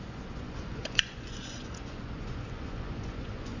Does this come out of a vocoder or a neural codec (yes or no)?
yes